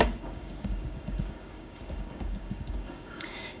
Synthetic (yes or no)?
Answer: yes